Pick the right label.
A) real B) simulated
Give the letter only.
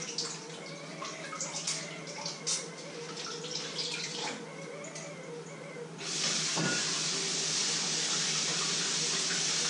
A